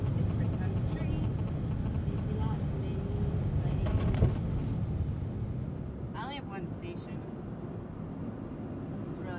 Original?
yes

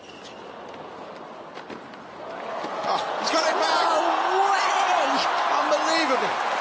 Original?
yes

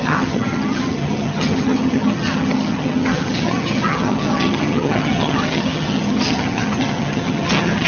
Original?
no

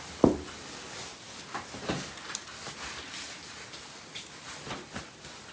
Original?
yes